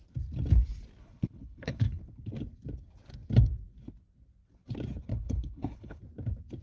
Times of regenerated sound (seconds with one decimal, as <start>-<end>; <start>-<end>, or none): 1.0-2.0; 5.1-6.0